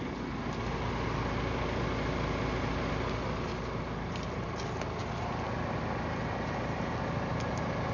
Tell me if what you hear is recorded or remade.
recorded